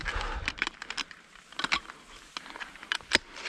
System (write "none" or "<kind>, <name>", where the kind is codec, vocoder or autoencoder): none